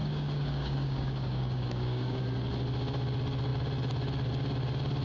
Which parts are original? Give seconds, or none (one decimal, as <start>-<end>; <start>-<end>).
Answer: 2.2-5.0